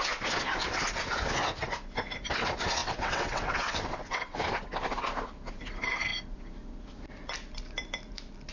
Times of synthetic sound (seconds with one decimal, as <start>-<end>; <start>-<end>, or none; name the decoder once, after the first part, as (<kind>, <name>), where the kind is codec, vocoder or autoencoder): 2.8-4.4 (vocoder, WaveNeXt)